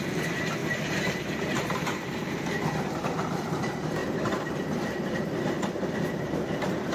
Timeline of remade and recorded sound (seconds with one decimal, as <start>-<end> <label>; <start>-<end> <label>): 0.0-0.6 remade; 0.6-1.6 recorded; 1.6-6.9 remade